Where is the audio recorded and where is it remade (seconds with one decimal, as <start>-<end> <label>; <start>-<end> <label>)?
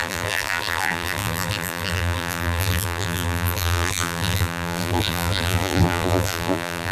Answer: 0.0-6.9 remade